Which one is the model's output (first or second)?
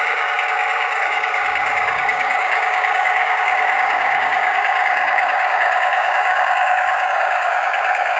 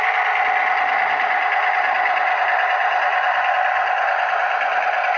first